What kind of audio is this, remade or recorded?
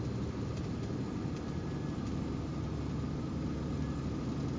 recorded